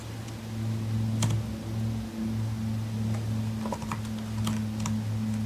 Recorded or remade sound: recorded